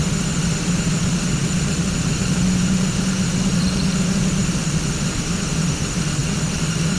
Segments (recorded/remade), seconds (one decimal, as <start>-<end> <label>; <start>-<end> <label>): 0.0-1.4 recorded; 1.4-5.5 remade; 5.5-6.2 recorded; 6.2-7.0 remade